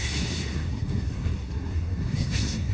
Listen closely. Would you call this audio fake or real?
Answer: fake